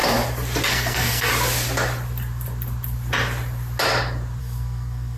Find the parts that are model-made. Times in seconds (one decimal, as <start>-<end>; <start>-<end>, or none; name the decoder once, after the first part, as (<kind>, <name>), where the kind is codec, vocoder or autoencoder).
0.7-1.3 (codec, SNAC); 4.4-5.2